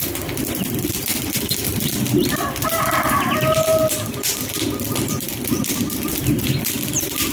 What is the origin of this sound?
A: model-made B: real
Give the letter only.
B